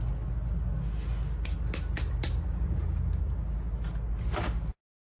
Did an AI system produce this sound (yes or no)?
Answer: no